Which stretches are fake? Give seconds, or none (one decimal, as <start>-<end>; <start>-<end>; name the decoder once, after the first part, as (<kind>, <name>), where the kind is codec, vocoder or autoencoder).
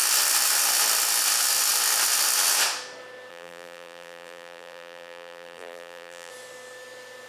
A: 3.3-6.3 (vocoder, BigVGAN v2)